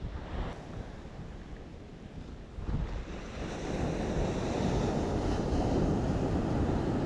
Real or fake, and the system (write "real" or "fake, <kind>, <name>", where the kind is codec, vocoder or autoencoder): real